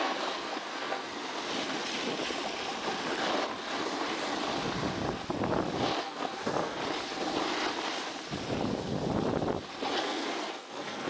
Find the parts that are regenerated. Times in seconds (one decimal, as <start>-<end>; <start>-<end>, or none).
0.0-1.1; 6.0-6.8; 10.0-11.1